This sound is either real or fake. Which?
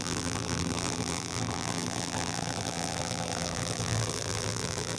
fake